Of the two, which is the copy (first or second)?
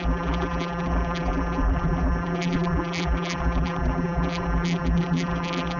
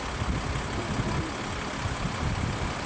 first